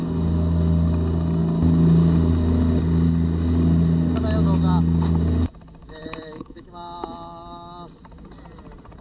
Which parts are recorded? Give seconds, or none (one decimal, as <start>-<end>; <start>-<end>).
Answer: 0.0-5.8; 6.7-9.0